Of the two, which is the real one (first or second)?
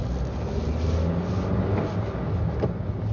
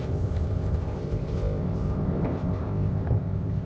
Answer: first